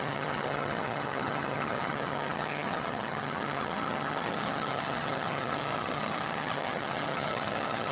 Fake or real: fake